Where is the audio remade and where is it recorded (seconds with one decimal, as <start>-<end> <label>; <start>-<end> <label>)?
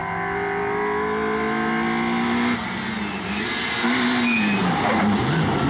0.0-5.7 recorded